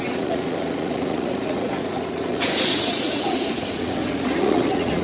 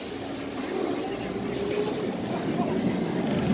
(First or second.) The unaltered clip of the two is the second